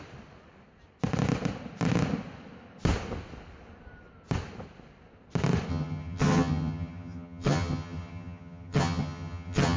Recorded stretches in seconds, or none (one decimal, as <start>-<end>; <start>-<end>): 0.0-5.7